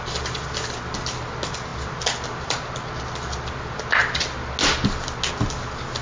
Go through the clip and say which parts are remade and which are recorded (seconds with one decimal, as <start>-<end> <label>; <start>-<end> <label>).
0.0-6.0 recorded